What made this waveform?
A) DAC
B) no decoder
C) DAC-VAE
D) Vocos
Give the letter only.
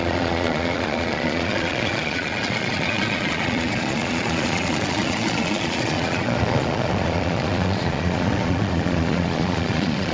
D